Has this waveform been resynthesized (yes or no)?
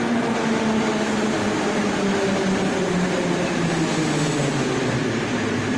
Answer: no